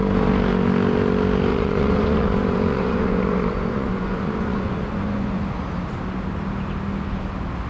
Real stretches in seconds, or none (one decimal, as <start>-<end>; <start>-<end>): 0.0-1.5; 5.4-7.7